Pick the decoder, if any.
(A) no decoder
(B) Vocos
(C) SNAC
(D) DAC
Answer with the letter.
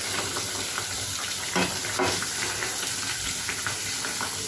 A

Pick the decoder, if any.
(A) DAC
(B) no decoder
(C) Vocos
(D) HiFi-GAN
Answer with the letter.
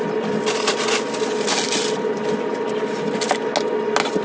B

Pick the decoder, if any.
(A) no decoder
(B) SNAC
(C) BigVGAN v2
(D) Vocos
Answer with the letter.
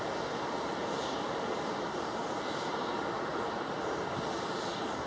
A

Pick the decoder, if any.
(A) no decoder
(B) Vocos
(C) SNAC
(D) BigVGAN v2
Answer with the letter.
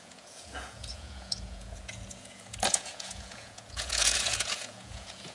B